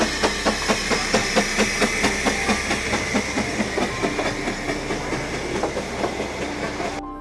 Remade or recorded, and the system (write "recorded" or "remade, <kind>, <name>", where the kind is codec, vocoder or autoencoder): recorded